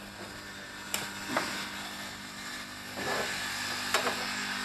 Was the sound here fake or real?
real